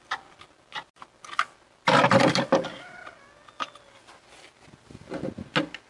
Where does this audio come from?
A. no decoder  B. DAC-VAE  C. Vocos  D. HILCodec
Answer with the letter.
A